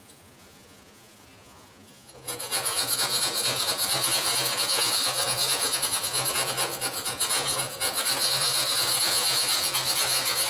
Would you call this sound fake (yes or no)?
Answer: yes